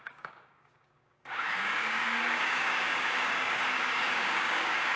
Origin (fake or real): fake